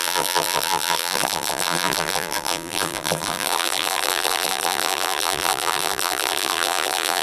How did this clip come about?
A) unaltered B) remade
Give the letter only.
B